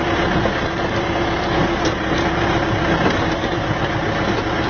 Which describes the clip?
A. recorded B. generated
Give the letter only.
A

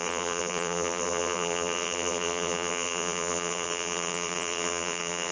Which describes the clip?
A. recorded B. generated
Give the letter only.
B